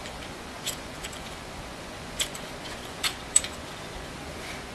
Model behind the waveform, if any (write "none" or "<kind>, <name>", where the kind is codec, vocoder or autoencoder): vocoder, Vocos